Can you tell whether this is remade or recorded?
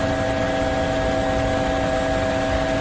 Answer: recorded